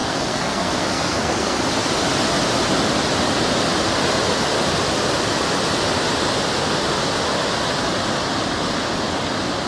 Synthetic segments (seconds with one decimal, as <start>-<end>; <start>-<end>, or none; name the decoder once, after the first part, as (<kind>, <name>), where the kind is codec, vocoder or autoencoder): 0.0-1.6 (codec, SNAC)